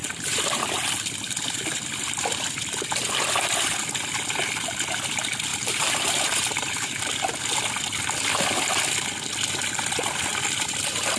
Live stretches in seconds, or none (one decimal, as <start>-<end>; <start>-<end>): 0.6-5.5; 7.0-11.2